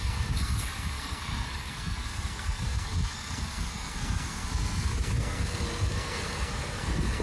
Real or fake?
fake